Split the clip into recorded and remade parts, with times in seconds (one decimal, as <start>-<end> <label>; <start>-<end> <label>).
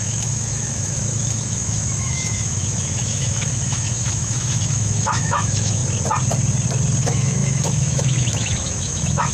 0.0-5.8 remade; 5.8-7.0 recorded; 7.0-9.3 remade